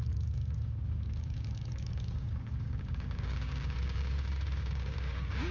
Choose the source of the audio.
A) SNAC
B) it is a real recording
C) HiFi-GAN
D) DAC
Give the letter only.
D